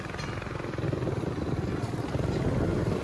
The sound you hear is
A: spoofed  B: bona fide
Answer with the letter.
B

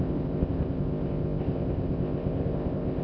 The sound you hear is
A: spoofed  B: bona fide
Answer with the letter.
A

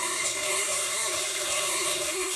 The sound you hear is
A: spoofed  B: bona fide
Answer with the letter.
A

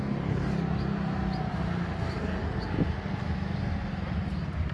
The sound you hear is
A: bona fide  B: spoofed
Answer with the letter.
A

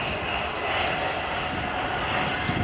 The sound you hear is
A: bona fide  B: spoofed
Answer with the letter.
A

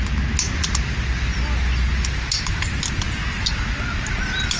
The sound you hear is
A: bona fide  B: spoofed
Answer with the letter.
A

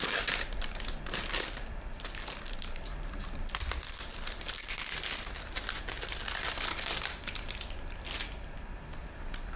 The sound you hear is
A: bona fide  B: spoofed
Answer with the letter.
B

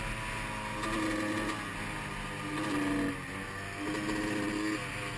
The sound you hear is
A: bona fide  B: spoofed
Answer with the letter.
A